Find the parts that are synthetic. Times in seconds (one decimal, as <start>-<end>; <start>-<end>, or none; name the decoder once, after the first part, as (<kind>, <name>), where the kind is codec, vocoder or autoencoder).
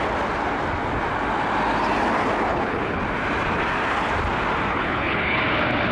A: 2.5-3.0 (codec, HILCodec); 4.7-5.4